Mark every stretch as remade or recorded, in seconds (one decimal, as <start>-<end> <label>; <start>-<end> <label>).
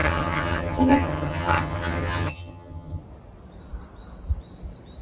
0.0-3.0 remade; 3.0-5.0 recorded